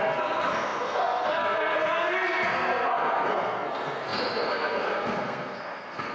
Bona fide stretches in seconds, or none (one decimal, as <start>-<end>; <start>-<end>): none